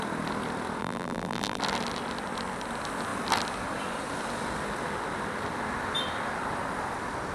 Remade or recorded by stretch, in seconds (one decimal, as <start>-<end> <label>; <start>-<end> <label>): 0.0-0.8 recorded; 0.8-1.6 remade; 1.6-7.3 recorded